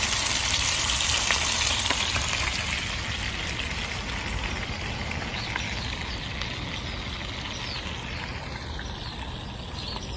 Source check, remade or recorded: recorded